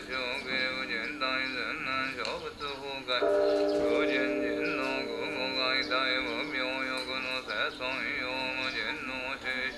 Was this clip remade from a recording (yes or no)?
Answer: no